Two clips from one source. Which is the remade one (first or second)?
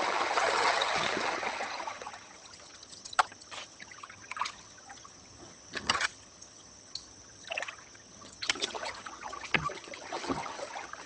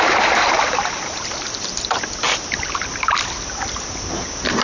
first